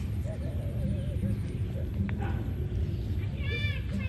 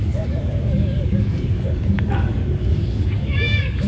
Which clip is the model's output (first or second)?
second